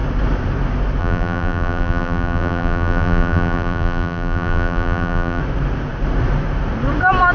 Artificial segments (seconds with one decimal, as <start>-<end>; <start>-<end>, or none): 1.0-5.4